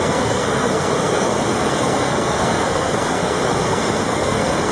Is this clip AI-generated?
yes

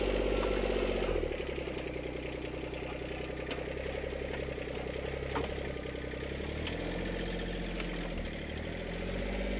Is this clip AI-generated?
no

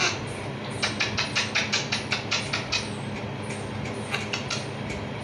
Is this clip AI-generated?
no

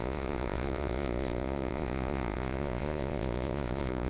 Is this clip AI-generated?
yes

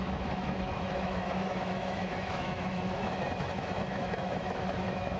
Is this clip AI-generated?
yes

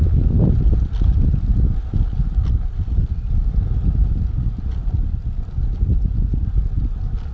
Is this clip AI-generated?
no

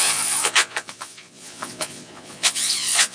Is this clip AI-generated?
yes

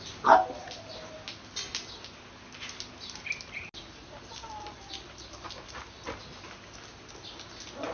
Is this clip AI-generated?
no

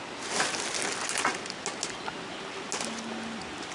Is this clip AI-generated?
no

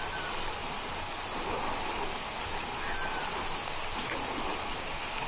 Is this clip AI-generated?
no